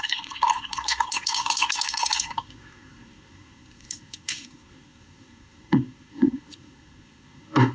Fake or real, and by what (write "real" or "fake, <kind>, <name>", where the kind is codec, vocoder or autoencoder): fake, codec, SNAC